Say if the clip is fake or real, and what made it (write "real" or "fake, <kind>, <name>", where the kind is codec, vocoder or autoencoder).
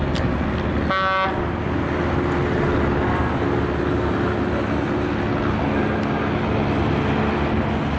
real